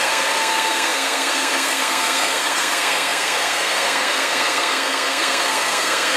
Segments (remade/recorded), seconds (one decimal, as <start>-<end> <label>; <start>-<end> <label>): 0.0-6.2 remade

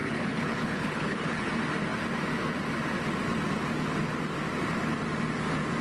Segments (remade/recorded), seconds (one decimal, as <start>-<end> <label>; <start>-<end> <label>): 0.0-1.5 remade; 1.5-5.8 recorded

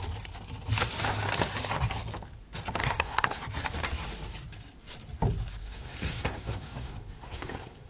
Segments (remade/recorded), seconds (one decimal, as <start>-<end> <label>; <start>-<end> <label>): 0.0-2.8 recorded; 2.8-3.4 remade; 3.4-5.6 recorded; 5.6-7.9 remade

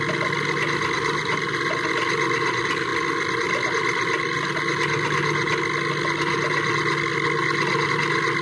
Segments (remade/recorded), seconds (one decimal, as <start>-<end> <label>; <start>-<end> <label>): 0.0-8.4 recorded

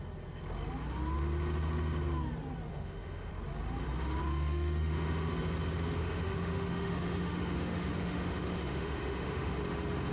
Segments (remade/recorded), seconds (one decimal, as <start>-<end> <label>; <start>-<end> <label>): 0.0-2.7 recorded; 2.7-3.3 remade; 3.3-4.2 recorded; 4.2-5.3 remade; 5.3-6.0 recorded; 6.0-9.6 remade; 9.6-10.1 recorded

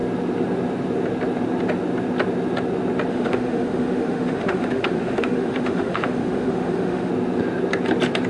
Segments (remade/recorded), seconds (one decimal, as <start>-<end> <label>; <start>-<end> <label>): 0.0-3.1 recorded; 3.1-7.1 remade; 7.1-8.3 recorded

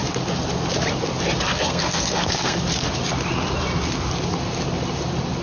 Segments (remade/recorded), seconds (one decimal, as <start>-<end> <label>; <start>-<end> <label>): 0.0-1.5 recorded; 1.5-2.6 remade; 2.6-5.4 recorded

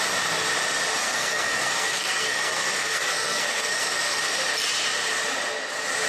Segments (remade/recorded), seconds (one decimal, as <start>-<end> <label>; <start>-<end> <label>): 0.0-1.0 recorded; 1.0-4.2 remade; 4.2-6.1 recorded